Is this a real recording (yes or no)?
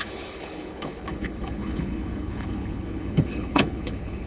no